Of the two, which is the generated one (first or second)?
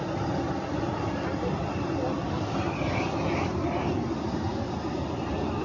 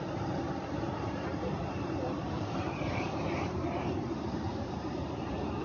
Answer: second